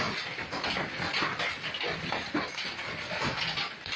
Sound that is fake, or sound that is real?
real